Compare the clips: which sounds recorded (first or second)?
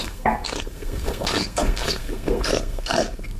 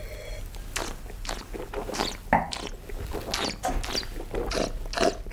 second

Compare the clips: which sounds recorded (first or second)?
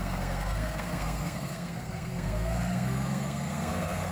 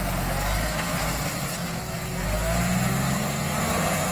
second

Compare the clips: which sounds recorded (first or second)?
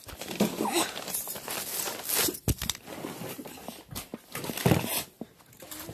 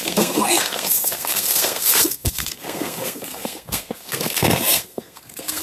first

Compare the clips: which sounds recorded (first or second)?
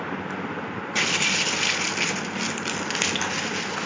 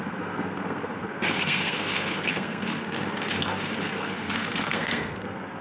first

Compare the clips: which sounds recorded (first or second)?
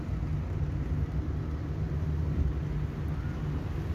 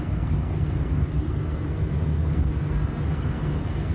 first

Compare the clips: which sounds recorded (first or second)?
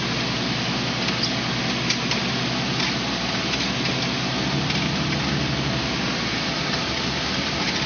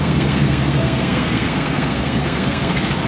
first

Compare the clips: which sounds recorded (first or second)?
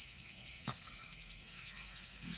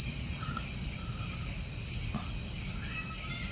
second